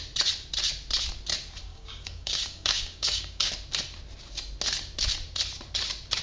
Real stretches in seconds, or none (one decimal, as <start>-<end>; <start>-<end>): 0.0-1.7; 3.5-6.2